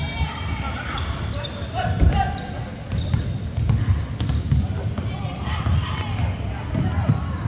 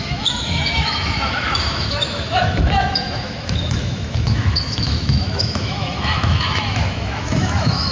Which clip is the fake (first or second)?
second